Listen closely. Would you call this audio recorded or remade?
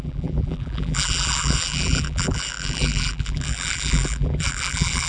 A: remade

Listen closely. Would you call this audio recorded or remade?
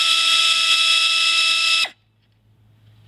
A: recorded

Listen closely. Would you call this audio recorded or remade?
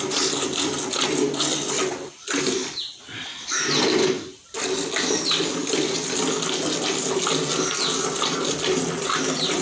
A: recorded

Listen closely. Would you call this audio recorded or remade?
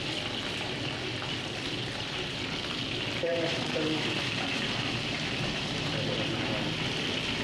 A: remade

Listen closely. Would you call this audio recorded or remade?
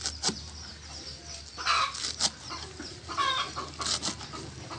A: recorded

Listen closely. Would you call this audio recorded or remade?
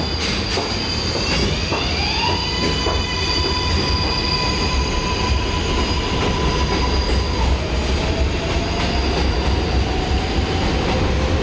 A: recorded